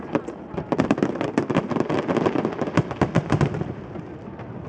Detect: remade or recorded recorded